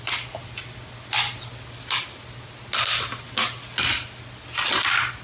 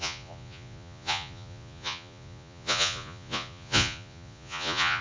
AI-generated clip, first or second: second